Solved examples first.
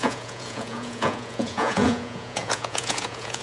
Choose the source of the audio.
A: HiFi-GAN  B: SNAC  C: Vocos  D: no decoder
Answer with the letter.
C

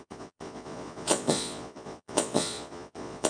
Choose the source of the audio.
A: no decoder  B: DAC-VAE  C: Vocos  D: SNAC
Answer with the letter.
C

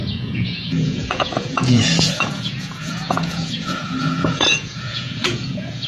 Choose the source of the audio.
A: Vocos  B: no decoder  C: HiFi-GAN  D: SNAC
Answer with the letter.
A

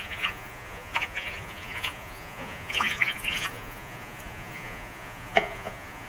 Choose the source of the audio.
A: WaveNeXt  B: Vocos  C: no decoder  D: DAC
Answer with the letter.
B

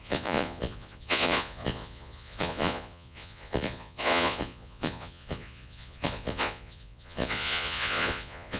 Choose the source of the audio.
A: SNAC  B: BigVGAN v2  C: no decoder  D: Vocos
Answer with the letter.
D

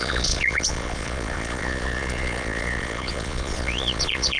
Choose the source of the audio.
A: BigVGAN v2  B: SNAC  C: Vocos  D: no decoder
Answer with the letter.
C